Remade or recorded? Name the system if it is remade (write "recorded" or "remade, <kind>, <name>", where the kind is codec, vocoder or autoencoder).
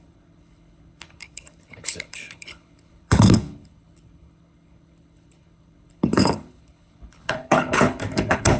remade, codec, HILCodec